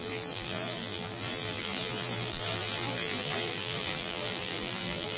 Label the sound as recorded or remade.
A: remade